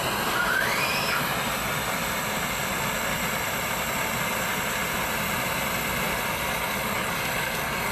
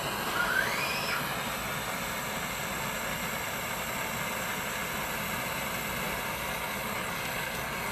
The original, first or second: second